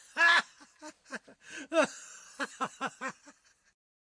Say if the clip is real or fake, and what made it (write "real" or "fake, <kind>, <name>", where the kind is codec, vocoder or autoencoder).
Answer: real